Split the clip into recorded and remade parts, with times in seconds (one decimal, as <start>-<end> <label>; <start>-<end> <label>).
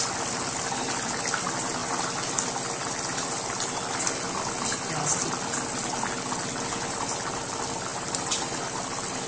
0.0-9.3 recorded